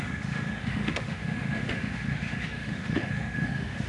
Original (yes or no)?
no